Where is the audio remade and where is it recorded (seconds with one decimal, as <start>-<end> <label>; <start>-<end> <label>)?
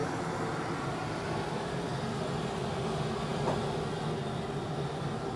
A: 0.0-1.9 recorded; 1.9-2.4 remade; 2.4-5.4 recorded